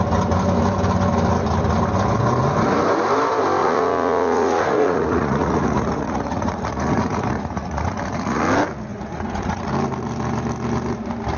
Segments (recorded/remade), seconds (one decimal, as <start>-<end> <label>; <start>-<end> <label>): 0.0-3.6 recorded; 3.6-8.4 remade; 8.4-8.9 recorded; 8.9-9.7 remade; 9.7-11.4 recorded